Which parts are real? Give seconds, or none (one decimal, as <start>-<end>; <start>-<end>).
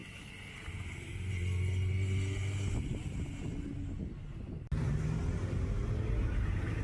0.0-6.8